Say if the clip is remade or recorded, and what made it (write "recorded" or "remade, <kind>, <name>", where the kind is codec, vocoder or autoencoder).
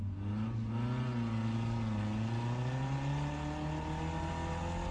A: recorded